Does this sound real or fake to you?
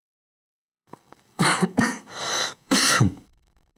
fake